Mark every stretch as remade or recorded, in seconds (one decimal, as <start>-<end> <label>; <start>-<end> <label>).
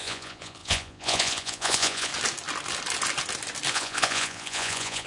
0.0-2.1 remade; 2.1-3.7 recorded; 3.7-5.1 remade